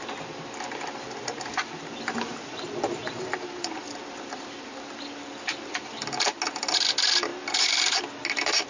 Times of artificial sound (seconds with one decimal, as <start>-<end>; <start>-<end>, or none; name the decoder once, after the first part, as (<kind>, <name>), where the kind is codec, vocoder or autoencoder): 3.0-5.3 (vocoder, BigVGAN v2); 7.3-8.0